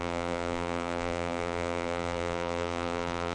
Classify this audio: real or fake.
fake